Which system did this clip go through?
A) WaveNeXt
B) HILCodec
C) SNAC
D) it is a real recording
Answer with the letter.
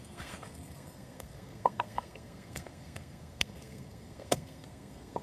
C